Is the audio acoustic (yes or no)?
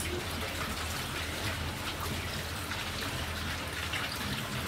yes